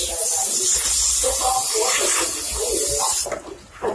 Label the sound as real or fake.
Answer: real